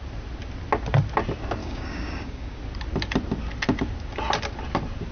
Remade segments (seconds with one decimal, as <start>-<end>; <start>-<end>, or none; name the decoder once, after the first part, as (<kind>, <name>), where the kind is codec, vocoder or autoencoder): 1.6-2.6 (codec, DAC)